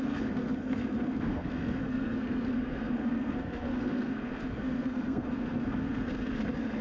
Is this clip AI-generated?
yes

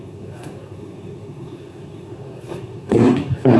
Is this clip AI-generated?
yes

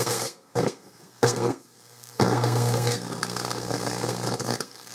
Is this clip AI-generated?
yes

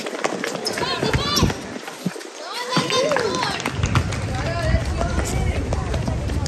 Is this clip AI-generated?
no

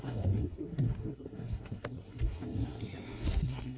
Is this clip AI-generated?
yes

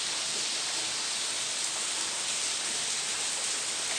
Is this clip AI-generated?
no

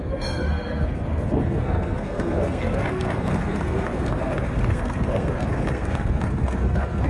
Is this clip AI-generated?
yes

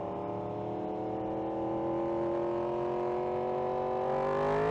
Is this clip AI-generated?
no